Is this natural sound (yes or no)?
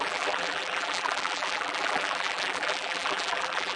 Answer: no